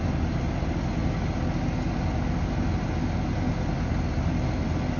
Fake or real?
real